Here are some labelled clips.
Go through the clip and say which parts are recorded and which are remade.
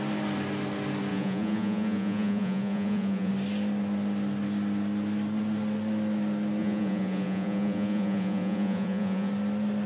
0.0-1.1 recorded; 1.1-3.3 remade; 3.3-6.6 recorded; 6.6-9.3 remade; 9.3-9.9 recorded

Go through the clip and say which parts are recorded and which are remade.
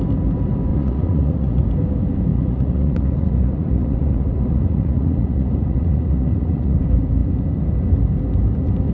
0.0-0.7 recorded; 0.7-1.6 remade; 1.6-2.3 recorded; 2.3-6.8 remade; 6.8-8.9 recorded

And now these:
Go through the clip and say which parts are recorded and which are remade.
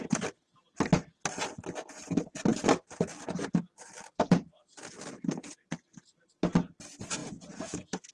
0.0-7.2 recorded; 7.2-8.1 remade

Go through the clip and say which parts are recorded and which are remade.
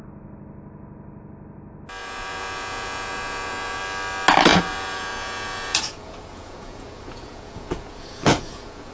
0.0-2.0 recorded; 2.0-3.8 remade; 3.8-4.5 recorded; 4.5-8.9 remade